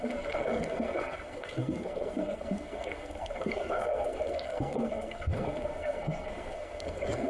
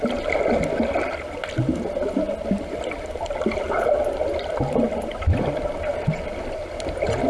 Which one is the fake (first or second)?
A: first